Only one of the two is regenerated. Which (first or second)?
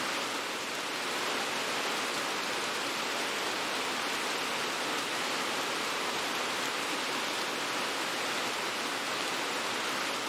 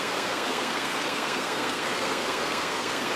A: second